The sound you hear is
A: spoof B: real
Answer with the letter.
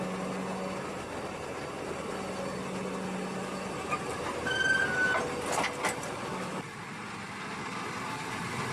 B